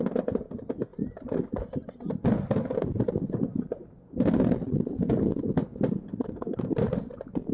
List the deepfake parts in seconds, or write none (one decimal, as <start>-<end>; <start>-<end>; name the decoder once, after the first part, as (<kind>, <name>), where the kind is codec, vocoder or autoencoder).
6.1-6.7 (codec, SNAC)